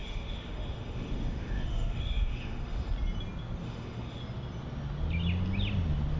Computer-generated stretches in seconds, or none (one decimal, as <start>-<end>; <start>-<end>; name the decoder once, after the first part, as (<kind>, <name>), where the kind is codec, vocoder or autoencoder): 0.0-2.9 (autoencoder, DAC-VAE); 3.6-4.2